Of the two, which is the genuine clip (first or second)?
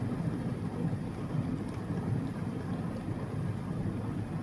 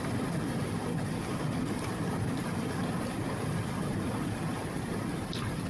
first